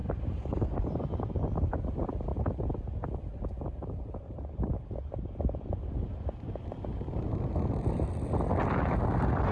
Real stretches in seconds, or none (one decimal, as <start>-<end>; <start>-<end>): 1.8-9.5